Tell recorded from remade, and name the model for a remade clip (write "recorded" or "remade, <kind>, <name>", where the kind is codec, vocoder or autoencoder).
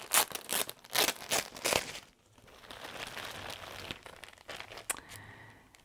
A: recorded